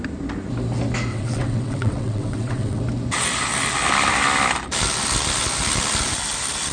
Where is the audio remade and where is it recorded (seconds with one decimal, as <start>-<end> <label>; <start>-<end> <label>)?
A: 0.0-1.1 recorded; 1.1-2.8 remade; 2.8-6.7 recorded